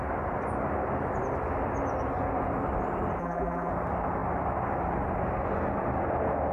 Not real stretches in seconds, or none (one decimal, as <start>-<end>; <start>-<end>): 3.2-3.7